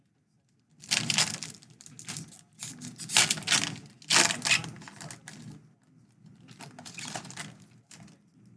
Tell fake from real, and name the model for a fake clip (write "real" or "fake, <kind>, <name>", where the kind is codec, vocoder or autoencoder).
real